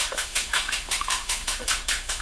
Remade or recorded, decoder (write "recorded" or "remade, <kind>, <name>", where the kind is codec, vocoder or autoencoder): remade, autoencoder, DAC-VAE